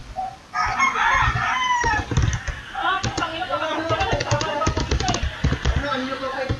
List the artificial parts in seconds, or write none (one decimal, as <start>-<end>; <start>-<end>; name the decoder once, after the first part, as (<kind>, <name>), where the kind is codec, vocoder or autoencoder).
1.6-2.5 (vocoder, BigVGAN v2)